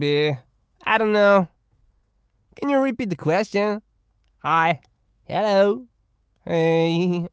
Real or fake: fake